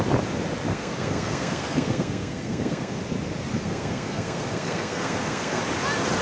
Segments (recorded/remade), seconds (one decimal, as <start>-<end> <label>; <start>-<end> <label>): 0.0-0.7 recorded; 0.7-3.0 remade; 3.0-3.5 recorded; 3.5-5.6 remade; 5.6-6.2 recorded